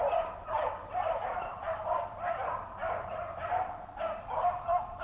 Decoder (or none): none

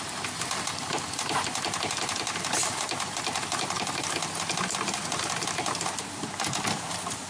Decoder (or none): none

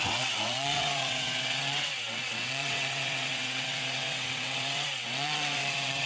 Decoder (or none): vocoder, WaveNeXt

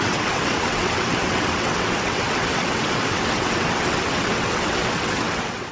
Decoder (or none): vocoder, WaveNeXt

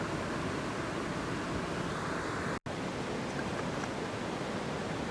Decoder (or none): none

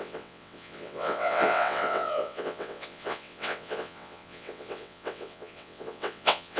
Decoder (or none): vocoder, WaveNeXt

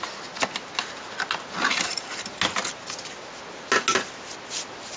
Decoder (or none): none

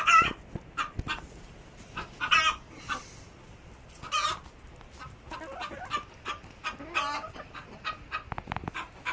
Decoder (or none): none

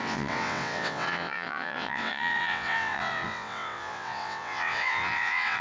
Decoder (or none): vocoder, WaveNeXt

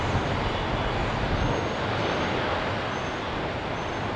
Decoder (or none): none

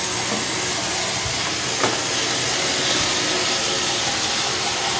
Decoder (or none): none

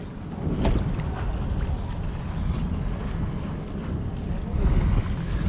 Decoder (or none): none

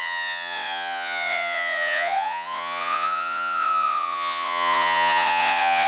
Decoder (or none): vocoder, WaveNeXt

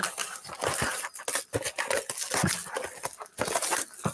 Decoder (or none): none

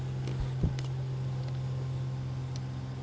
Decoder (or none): none